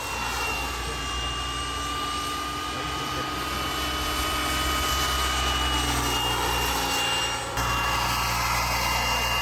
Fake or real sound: real